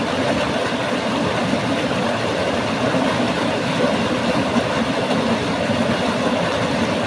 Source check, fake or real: real